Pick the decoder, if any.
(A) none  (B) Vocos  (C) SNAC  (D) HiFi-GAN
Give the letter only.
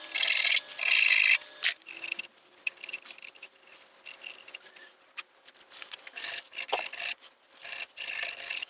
A